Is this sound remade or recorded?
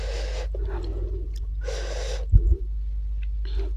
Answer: recorded